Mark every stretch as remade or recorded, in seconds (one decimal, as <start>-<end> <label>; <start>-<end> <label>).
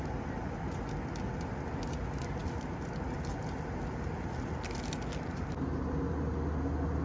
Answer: 0.0-7.0 recorded